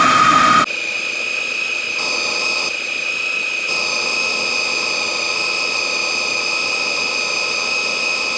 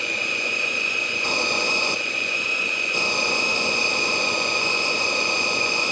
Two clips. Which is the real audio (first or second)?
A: first